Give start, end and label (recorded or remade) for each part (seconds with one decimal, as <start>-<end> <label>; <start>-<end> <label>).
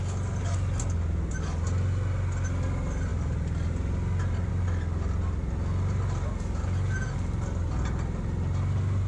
0.0-9.1 recorded